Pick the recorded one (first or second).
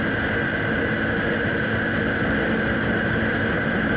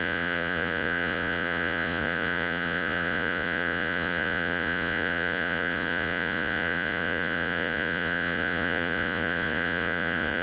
first